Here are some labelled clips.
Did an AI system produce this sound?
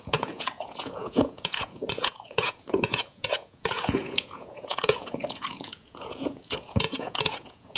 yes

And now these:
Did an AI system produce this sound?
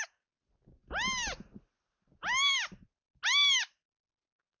no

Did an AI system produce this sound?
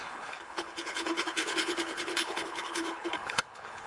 yes